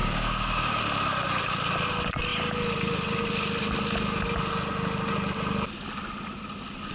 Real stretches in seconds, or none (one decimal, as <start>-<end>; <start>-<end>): 0.8-6.9